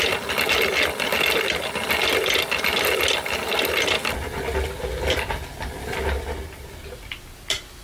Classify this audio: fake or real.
real